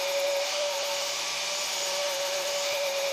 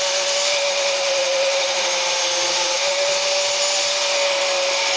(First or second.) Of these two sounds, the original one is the second